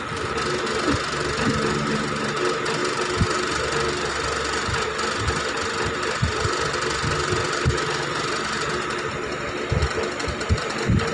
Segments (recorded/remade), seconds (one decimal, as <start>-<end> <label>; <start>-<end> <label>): 0.0-11.1 recorded